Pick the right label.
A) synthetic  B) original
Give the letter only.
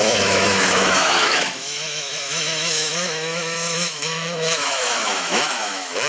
A